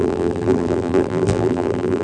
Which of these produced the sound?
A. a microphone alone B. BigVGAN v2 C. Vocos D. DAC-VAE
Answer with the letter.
B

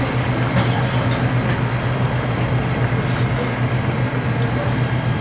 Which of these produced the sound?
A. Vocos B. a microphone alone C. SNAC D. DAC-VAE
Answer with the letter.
B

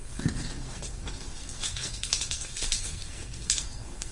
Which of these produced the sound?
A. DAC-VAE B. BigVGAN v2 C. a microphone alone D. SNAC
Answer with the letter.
D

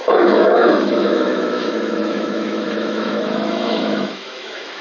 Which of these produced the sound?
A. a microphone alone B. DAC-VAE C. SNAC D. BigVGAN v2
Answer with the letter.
B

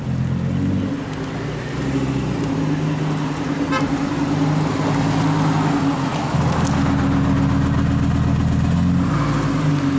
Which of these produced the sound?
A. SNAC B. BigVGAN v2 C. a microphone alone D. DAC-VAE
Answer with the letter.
C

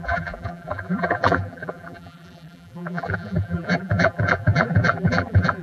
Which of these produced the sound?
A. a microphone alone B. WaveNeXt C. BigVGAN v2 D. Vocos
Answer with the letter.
C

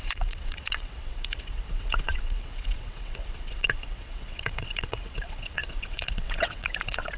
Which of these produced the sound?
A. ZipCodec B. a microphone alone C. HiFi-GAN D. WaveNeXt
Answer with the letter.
D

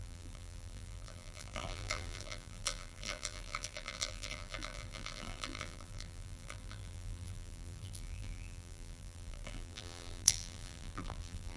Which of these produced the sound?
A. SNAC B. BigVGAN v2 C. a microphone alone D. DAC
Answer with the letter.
B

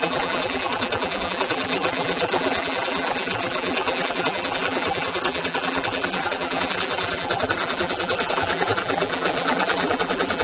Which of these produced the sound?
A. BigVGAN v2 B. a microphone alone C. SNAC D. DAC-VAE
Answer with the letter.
A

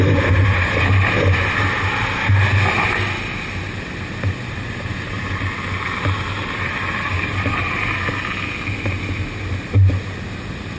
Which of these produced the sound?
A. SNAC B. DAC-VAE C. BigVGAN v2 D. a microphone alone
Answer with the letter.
D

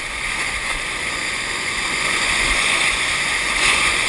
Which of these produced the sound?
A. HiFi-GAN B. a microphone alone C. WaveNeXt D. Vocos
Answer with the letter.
D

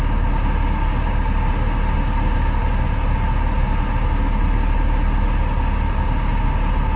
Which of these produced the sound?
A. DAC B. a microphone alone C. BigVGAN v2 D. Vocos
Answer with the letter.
B